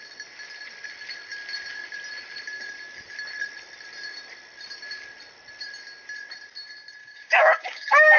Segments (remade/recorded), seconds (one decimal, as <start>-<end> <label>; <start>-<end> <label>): 0.0-7.0 recorded; 7.0-8.2 remade